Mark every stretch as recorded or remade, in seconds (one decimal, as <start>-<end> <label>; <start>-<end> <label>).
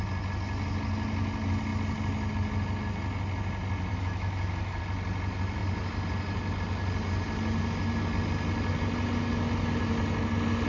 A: 0.0-3.9 recorded; 3.9-4.8 remade; 4.8-10.7 recorded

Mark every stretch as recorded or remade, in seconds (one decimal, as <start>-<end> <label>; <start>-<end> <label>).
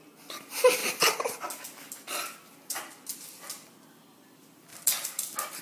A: 0.0-5.6 recorded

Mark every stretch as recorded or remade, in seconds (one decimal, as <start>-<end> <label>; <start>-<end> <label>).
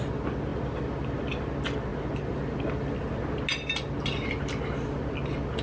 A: 0.0-5.6 recorded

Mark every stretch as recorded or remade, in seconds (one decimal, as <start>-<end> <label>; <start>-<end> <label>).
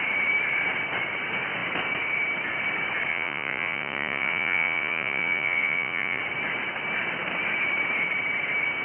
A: 0.0-3.1 recorded; 3.1-6.2 remade; 6.2-8.8 recorded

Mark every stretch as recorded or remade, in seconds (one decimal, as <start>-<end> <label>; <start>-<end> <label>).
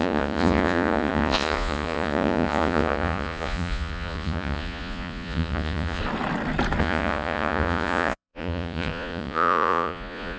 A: 0.0-6.0 remade; 6.0-6.8 recorded; 6.8-10.4 remade